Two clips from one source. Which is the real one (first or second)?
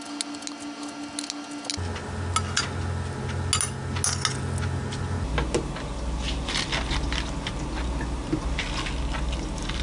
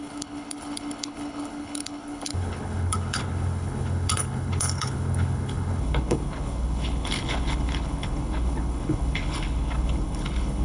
first